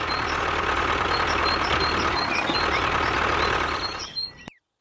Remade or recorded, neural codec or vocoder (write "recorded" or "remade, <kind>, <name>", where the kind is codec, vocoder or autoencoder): recorded